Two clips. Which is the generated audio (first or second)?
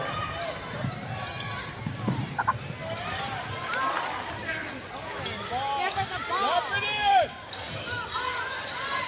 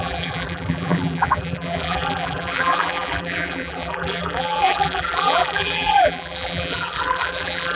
second